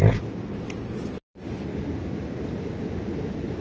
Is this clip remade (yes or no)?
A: no